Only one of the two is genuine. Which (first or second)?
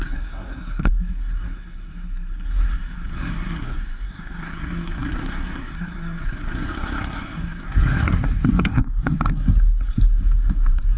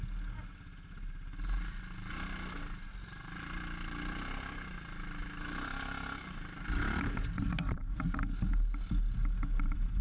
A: second